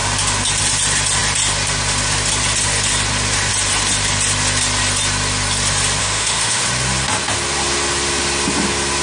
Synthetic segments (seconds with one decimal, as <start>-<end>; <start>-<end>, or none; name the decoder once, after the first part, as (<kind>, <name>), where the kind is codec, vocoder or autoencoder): 6.0-6.6 (autoencoder, DAC-VAE)